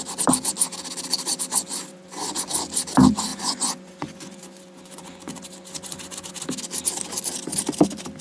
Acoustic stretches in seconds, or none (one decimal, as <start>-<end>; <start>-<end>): 0.0-1.7; 2.5-3.3; 6.3-8.2